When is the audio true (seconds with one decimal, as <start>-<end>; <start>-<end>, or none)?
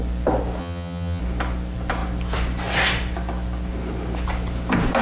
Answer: 0.0-0.6; 1.2-5.0